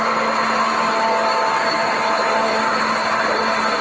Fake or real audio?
real